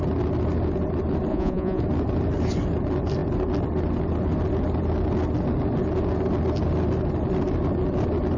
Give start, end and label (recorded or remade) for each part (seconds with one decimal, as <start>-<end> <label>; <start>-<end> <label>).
0.0-1.3 recorded; 1.3-1.8 remade; 1.8-8.4 recorded